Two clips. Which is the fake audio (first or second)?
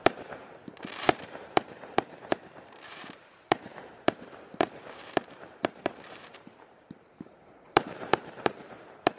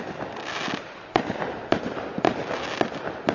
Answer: first